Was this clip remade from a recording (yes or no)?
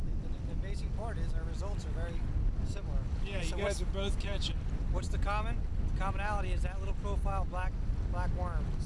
no